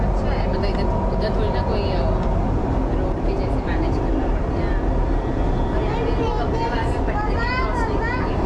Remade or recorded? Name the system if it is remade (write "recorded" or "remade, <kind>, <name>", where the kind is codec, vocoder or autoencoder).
recorded